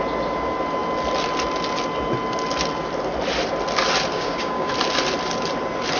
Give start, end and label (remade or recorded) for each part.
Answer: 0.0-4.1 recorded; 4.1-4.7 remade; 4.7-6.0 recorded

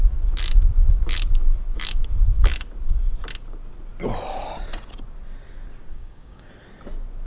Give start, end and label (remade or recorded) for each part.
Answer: 0.0-5.9 recorded; 5.9-6.5 remade; 6.5-7.3 recorded